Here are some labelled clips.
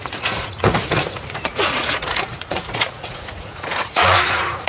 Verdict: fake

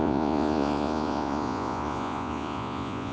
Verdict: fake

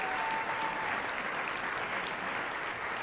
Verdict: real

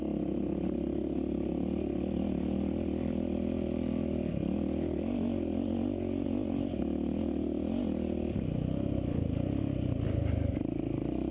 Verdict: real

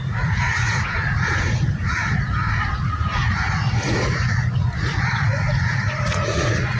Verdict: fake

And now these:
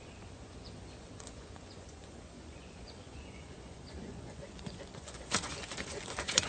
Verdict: fake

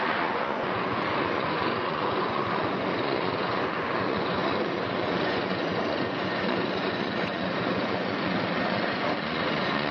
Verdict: fake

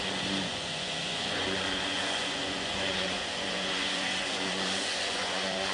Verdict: fake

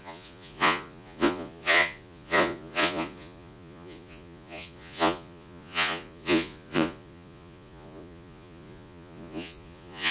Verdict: fake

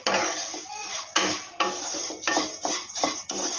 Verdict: real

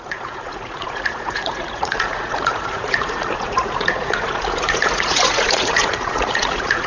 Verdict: fake